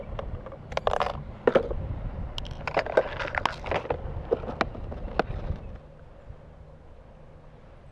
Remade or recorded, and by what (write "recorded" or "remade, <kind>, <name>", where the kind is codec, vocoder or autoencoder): recorded